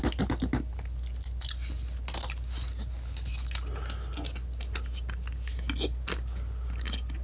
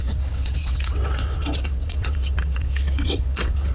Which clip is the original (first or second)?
first